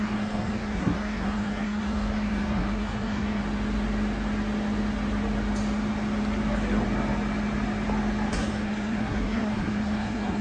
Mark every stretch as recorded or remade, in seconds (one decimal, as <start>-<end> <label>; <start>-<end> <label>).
0.0-3.4 remade; 3.4-8.3 recorded; 8.3-10.4 remade